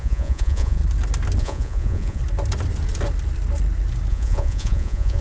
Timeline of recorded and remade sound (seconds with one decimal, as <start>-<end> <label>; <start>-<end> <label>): 0.0-0.8 remade; 0.8-1.4 recorded; 1.4-2.2 remade; 2.2-4.1 recorded; 4.1-5.2 remade